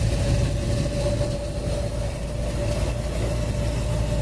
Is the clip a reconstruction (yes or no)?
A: no